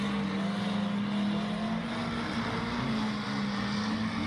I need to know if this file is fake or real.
real